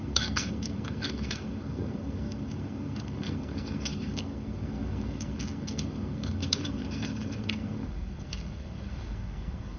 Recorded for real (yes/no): no